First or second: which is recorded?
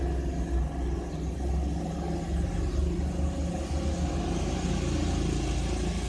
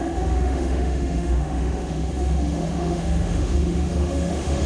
first